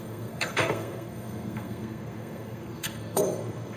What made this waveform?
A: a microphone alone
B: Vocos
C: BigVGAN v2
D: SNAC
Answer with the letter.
D